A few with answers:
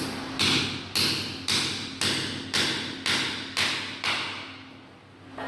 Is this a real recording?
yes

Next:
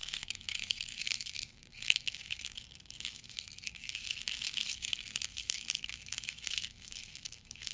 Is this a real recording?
no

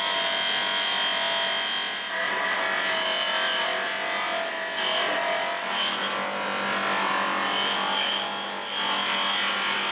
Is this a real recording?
yes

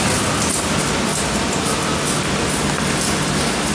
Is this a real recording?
yes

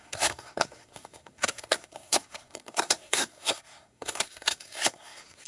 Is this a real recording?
no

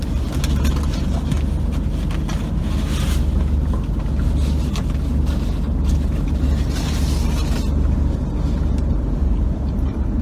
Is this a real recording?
yes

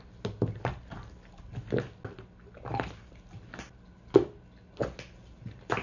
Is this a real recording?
yes